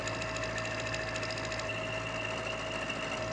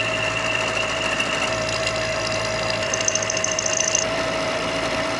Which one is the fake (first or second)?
second